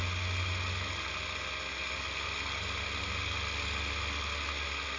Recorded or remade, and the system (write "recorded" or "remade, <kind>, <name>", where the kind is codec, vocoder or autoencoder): recorded